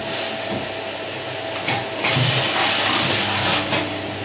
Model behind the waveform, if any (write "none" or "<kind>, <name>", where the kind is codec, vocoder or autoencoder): none